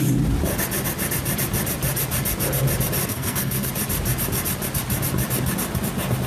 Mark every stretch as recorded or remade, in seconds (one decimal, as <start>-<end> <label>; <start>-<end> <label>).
0.0-3.0 recorded; 3.0-3.7 remade; 3.7-6.3 recorded

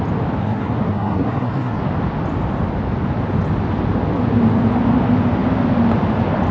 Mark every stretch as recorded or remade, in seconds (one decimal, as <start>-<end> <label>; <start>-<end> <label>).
0.0-0.4 recorded; 0.4-1.8 remade; 1.8-6.5 recorded

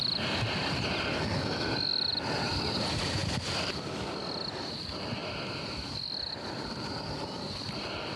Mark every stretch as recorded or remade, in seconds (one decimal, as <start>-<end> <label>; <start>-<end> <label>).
0.0-8.2 recorded

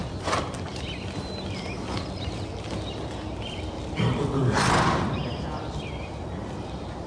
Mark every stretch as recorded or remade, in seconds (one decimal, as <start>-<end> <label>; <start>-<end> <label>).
0.0-7.1 recorded

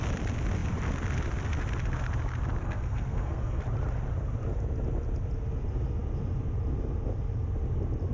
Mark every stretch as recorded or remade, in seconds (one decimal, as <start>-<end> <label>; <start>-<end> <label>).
0.0-2.6 recorded; 2.6-3.6 remade; 3.6-8.1 recorded